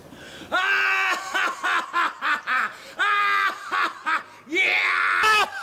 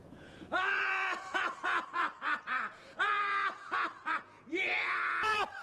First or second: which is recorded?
first